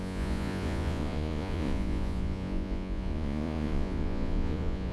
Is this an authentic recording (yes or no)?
no